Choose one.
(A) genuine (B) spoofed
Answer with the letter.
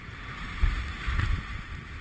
A